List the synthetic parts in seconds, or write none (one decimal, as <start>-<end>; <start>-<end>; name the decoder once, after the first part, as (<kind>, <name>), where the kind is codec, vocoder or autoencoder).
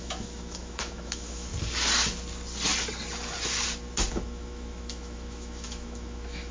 0.0-1.5 (autoencoder, DAC-VAE); 4.1-6.5